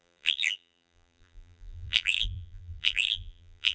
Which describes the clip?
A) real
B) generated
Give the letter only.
B